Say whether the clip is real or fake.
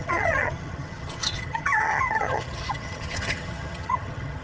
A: fake